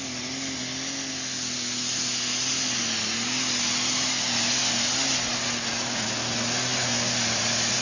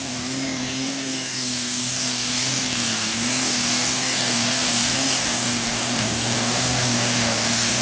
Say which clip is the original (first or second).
first